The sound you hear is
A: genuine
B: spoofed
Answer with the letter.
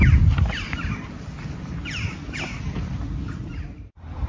A